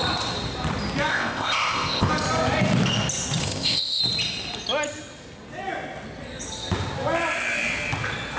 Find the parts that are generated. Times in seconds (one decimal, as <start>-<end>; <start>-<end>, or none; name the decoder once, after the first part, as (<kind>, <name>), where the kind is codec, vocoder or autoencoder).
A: 1.1-2.1 (codec, ZipCodec); 3.4-4.0